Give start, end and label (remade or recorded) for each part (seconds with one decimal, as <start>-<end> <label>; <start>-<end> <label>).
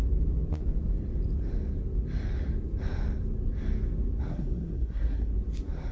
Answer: 0.0-4.3 recorded; 4.3-5.3 remade; 5.3-5.9 recorded